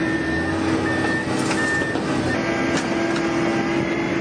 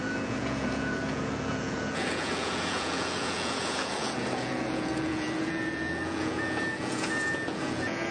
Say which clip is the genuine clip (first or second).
first